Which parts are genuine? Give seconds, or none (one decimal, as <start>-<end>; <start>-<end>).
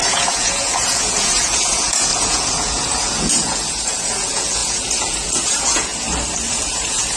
5.9-6.5